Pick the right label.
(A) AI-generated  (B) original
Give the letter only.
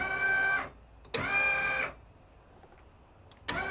B